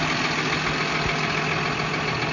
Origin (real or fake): real